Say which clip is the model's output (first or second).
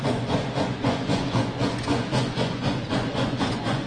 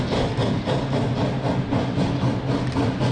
first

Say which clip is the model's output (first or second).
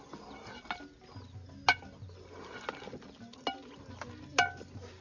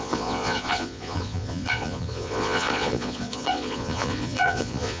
second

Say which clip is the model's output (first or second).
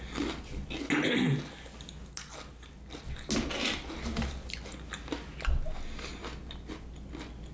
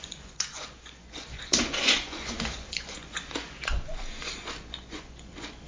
second